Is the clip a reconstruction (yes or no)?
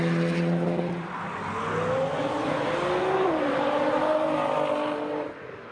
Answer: no